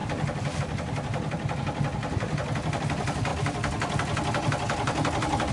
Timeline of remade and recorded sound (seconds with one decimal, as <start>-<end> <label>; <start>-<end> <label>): 0.0-5.5 recorded